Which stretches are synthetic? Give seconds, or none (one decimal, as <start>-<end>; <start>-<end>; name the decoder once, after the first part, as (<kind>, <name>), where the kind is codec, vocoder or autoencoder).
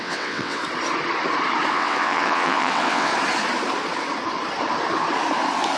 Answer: 0.0-0.6 (vocoder, WaveNeXt); 1.7-3.1